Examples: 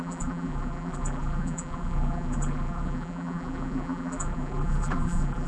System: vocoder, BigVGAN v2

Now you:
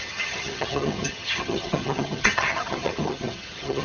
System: vocoder, HiFi-GAN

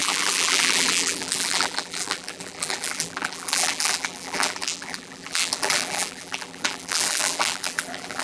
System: vocoder, BigVGAN v2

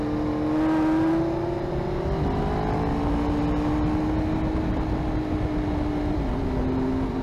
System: none